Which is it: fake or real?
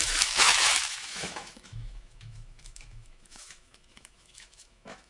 fake